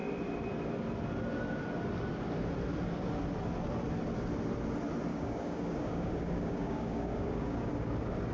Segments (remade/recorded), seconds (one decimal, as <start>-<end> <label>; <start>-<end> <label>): 0.0-5.1 recorded; 5.1-7.7 remade; 7.7-8.3 recorded